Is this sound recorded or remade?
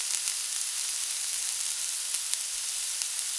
recorded